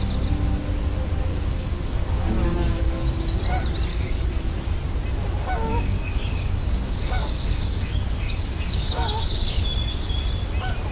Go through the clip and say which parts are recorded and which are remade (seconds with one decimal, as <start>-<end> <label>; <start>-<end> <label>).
0.0-1.3 recorded; 1.3-3.4 remade; 3.4-3.9 recorded; 3.9-4.5 remade; 4.5-5.7 recorded; 5.7-10.2 remade; 10.2-10.9 recorded